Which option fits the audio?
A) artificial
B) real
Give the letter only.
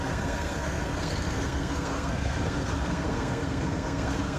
A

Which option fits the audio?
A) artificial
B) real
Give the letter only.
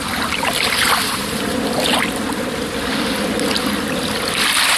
B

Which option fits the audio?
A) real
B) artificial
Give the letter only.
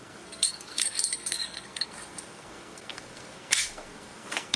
B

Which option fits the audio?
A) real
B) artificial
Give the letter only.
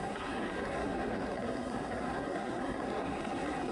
B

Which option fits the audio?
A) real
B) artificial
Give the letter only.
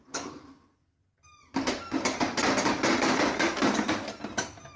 A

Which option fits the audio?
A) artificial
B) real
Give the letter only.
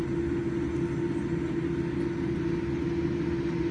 B